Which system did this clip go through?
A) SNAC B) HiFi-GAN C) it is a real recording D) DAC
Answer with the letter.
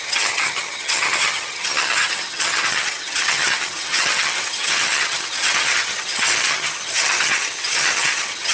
B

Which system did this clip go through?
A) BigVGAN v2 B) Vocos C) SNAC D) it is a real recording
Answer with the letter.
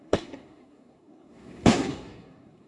C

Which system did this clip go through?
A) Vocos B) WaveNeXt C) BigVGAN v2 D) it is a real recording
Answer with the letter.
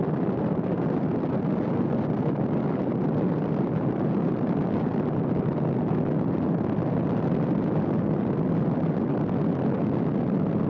D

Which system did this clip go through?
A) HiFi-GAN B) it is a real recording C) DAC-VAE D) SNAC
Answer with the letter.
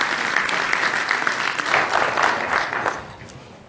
B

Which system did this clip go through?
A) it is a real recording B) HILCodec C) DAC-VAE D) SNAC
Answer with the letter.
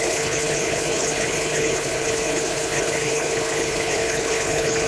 B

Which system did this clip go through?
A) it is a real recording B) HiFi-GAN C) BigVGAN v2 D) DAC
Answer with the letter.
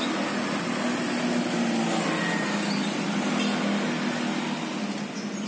A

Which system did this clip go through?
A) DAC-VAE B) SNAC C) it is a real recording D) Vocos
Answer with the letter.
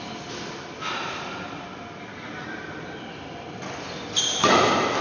C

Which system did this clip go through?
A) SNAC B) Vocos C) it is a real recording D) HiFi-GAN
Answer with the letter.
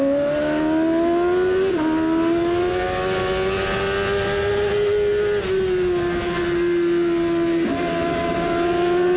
C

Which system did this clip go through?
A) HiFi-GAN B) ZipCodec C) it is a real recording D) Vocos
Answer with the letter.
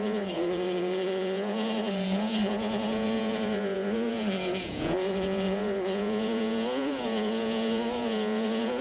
D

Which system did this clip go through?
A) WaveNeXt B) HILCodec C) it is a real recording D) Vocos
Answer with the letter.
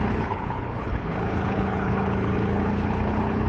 B